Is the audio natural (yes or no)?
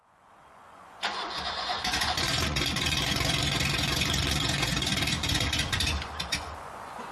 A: no